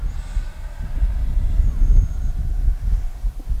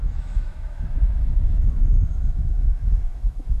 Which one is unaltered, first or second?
first